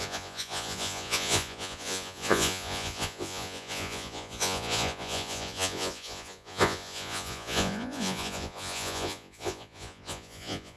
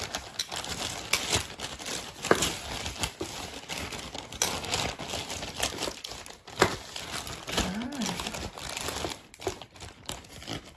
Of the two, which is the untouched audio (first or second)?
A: second